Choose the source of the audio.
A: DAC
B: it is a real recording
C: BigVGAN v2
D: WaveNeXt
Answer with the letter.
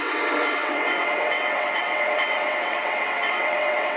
D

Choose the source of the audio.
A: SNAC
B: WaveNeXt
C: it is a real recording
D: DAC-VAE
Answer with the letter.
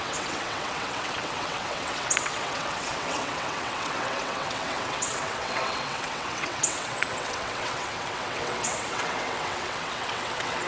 B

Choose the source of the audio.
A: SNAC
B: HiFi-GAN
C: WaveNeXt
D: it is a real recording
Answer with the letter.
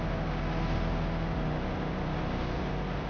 D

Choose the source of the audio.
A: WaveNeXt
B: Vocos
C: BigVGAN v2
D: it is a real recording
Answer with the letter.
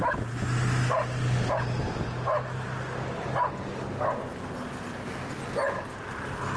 D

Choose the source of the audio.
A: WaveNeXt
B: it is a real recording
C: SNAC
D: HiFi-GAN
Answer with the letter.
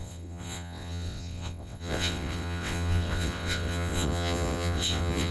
A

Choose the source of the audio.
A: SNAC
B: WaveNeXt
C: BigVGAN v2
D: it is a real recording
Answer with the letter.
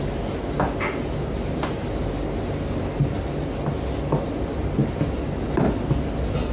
D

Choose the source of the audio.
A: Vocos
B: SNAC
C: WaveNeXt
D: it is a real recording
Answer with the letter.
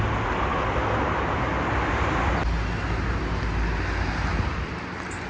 D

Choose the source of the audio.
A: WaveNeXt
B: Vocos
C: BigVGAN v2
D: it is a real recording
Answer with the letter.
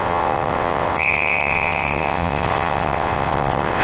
A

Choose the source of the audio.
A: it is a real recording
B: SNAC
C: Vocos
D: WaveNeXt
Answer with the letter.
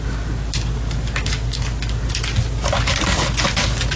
A